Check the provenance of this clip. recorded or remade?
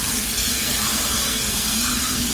remade